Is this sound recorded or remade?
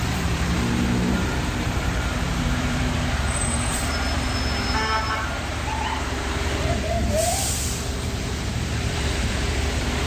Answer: remade